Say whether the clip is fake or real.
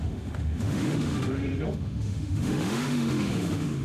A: fake